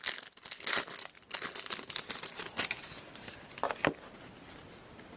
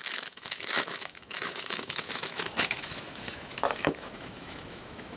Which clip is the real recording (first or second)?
first